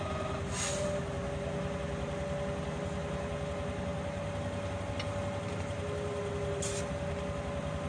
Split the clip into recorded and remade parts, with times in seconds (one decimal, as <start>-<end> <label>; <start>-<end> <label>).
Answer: 0.0-7.9 recorded